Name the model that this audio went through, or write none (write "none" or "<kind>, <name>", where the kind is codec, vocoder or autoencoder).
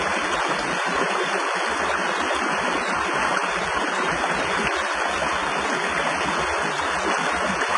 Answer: none